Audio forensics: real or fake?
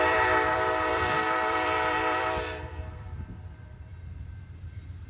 fake